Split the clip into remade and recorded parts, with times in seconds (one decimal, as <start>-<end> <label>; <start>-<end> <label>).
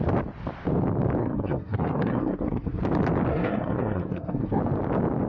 0.0-1.2 recorded; 1.2-2.8 remade; 2.8-3.3 recorded; 3.3-4.6 remade; 4.6-5.3 recorded